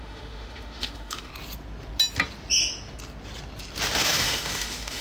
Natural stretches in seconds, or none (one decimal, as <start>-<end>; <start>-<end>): 1.3-4.0